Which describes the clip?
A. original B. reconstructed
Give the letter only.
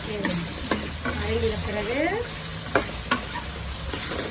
A